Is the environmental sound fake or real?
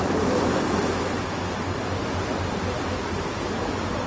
real